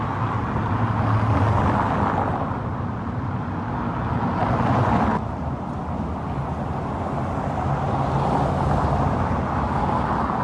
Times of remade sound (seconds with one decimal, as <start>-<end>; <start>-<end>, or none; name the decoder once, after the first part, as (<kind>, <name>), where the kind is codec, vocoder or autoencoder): none